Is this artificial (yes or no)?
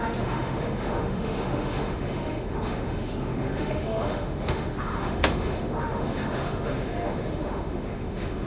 yes